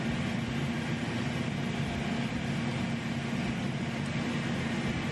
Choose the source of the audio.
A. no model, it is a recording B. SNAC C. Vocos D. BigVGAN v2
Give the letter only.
A